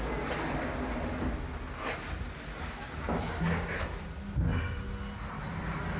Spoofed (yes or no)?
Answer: no